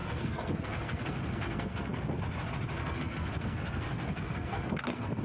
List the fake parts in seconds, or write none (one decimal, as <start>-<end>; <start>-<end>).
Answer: 0.0-2.2; 2.8-5.2